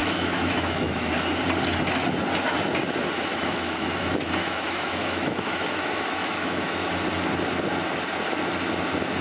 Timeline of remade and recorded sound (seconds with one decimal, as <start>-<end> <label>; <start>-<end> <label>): 0.0-1.1 remade; 1.1-3.3 recorded; 3.3-6.9 remade; 6.9-9.2 recorded

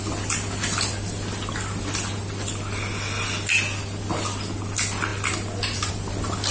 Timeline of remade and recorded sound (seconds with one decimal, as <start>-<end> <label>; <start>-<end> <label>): 0.0-6.5 recorded

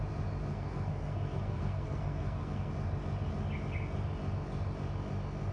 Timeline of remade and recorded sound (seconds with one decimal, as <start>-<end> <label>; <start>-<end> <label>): 0.0-0.5 recorded; 0.5-2.7 remade; 2.7-5.5 recorded